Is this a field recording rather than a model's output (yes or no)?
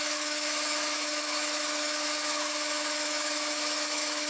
no